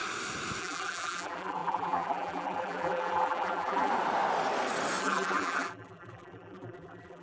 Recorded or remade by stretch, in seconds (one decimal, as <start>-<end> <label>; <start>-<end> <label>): 0.0-0.6 recorded; 0.6-3.9 remade; 3.9-5.0 recorded; 5.0-7.2 remade